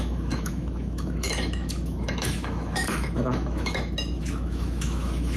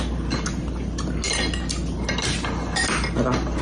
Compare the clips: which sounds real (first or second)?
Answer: second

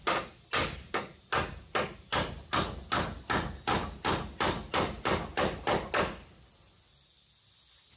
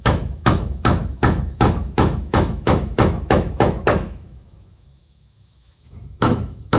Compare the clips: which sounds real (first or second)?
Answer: first